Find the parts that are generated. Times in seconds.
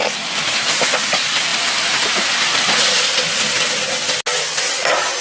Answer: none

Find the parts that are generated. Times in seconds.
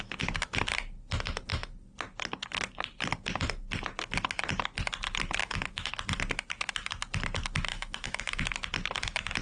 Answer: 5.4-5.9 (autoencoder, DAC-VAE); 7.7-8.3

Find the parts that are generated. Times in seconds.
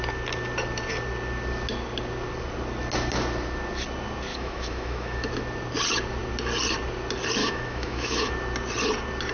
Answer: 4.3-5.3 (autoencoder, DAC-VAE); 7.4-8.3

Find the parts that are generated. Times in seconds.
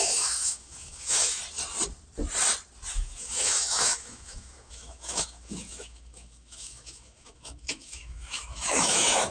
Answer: 0.0-1.4 (autoencoder, DAC-VAE); 2.9-9.3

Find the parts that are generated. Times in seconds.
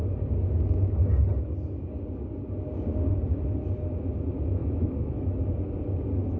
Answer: 4.6-5.4 (autoencoder, DAC-VAE)